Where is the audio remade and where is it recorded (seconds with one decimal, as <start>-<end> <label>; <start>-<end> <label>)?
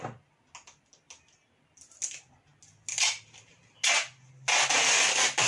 0.0-5.5 recorded